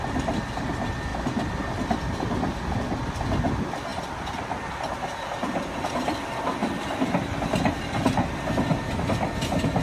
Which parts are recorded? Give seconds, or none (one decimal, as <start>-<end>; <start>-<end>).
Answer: 0.0-9.8

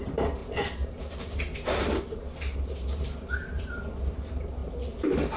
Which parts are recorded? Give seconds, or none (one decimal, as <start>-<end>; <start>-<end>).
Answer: none

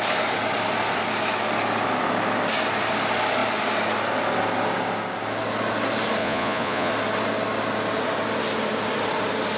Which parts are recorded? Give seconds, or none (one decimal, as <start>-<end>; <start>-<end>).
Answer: 0.0-6.2; 6.9-9.6